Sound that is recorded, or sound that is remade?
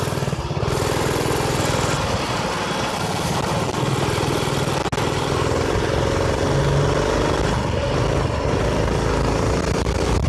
recorded